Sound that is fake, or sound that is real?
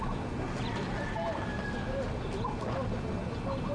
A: real